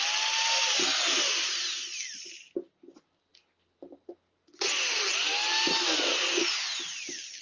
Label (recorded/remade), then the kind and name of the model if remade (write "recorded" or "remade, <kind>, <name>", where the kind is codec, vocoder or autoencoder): recorded